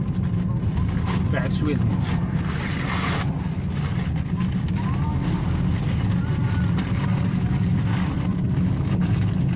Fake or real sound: real